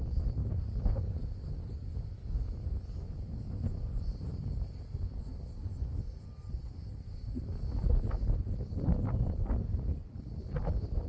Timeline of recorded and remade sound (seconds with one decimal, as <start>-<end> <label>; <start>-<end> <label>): 0.0-0.4 recorded; 0.4-1.1 remade; 1.1-5.9 recorded; 5.9-7.7 remade; 7.7-11.1 recorded

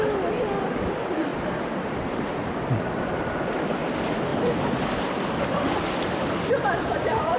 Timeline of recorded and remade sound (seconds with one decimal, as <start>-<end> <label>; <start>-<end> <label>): 0.0-1.3 recorded; 1.3-2.9 remade; 2.9-4.3 recorded; 4.3-5.6 remade; 5.6-7.4 recorded

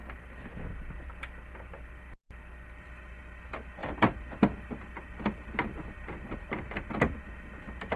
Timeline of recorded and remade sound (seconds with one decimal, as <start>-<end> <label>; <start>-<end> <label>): 0.0-0.5 remade; 0.5-3.8 recorded; 3.8-7.0 remade; 7.0-8.0 recorded

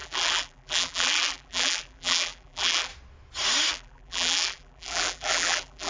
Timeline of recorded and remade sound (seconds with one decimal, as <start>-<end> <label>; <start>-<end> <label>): 0.0-2.9 remade; 2.9-3.7 recorded; 3.7-5.9 remade

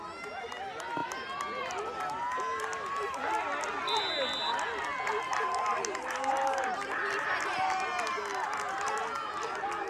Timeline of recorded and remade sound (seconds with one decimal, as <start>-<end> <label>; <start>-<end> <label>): 0.0-8.3 recorded; 8.3-9.0 remade; 9.0-9.9 recorded

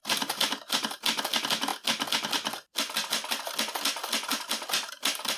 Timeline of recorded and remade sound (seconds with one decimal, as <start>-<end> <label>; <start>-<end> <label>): 0.0-1.0 remade; 1.0-5.4 recorded

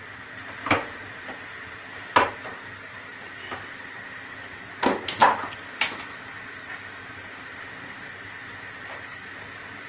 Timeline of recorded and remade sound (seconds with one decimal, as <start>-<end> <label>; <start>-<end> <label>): 0.0-5.2 recorded; 5.2-6.6 remade; 6.6-7.0 recorded; 7.0-7.9 remade; 7.9-9.1 recorded; 9.1-9.9 remade